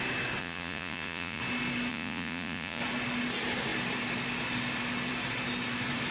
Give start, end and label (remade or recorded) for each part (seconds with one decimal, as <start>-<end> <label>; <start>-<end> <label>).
0.0-0.4 recorded; 0.4-1.4 remade; 1.4-1.9 recorded; 1.9-2.8 remade; 2.8-6.1 recorded